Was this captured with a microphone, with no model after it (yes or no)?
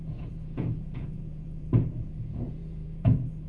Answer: no